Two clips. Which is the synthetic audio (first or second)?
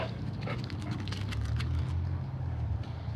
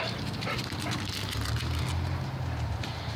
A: first